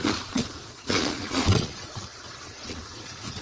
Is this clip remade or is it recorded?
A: remade